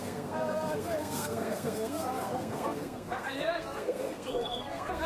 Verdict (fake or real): fake